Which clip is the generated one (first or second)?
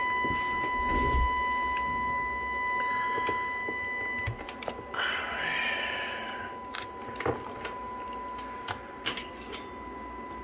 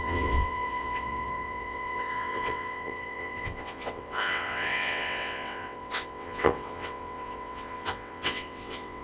second